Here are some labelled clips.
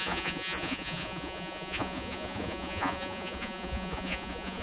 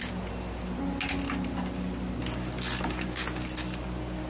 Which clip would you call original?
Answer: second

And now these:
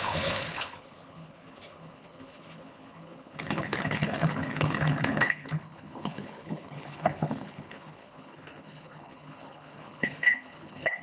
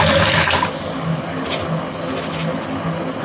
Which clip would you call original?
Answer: second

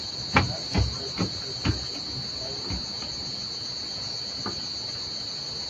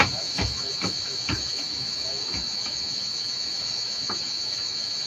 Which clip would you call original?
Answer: first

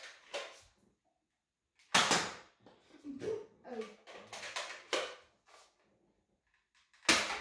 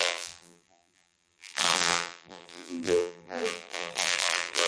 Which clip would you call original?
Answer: first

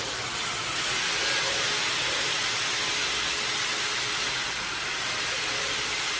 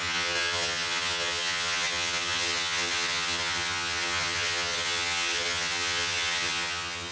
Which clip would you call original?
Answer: first